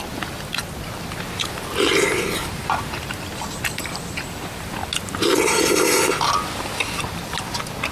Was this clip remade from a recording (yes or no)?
no